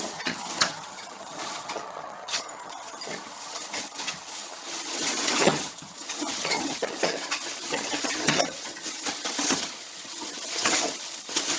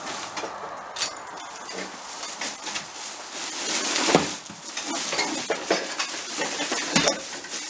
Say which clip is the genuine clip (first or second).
second